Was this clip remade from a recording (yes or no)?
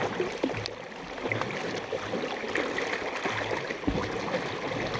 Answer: no